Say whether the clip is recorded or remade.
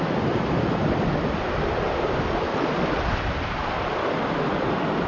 recorded